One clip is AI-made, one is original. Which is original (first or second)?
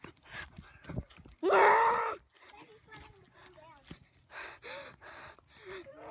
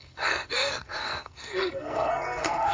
first